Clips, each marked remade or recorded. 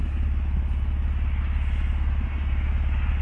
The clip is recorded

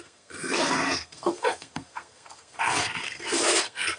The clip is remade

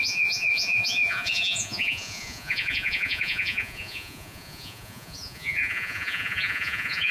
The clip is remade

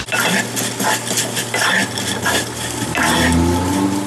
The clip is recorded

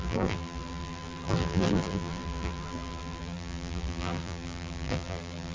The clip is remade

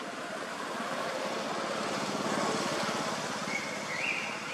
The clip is recorded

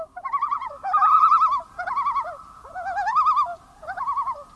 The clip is recorded